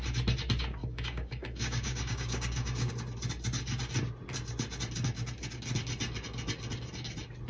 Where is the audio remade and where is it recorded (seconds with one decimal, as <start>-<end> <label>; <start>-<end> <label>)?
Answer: 0.0-0.8 recorded; 0.8-2.9 remade; 2.9-7.5 recorded